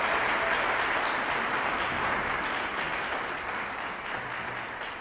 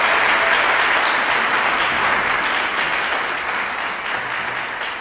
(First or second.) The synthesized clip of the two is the first